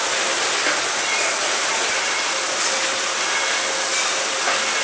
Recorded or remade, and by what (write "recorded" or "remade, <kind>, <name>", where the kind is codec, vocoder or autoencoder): recorded